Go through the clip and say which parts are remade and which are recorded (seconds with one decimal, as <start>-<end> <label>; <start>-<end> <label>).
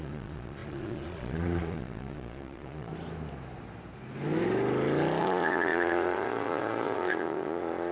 0.0-2.9 remade; 2.9-5.2 recorded; 5.2-7.9 remade